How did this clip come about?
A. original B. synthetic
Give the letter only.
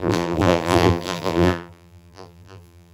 B